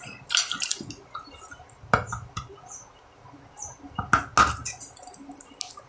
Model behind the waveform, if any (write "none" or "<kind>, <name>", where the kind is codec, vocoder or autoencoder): none